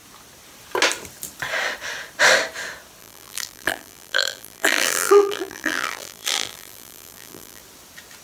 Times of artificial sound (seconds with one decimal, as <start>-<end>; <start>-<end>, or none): 3.0-7.6